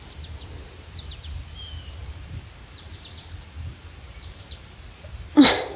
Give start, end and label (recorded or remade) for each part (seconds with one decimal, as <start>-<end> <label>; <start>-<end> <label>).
0.0-2.0 recorded; 2.0-5.8 remade